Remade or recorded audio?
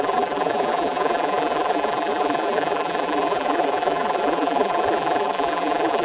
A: remade